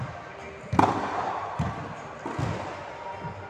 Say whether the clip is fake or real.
real